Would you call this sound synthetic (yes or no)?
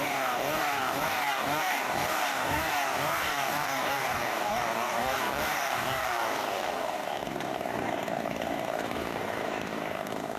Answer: yes